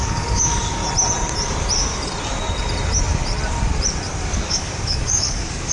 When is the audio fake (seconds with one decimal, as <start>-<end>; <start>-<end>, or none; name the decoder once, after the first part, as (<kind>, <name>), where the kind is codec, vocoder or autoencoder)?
0.0-0.8 (codec, DAC); 4.2-5.7